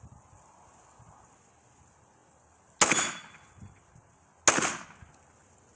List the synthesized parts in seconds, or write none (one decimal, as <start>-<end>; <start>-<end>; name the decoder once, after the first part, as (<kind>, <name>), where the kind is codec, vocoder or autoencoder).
none